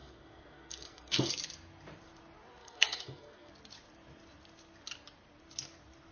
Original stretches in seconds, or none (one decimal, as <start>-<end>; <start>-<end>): 1.3-2.6; 3.5-6.1